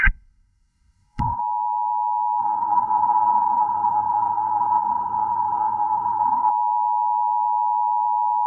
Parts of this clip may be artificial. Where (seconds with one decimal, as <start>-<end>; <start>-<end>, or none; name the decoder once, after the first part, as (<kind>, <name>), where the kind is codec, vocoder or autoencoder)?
0.0-1.4 (codec, SNAC); 2.4-6.5